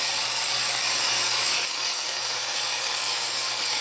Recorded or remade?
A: remade